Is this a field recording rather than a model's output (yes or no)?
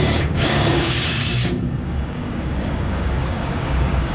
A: no